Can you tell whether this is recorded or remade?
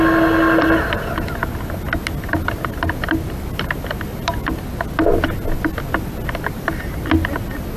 recorded